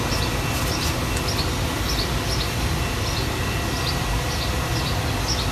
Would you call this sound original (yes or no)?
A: yes